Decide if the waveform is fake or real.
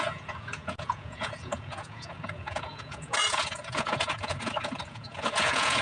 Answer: fake